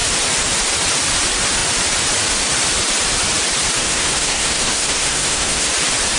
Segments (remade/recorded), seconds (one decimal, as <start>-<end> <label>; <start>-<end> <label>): 0.0-3.8 recorded; 3.8-5.7 remade; 5.7-6.2 recorded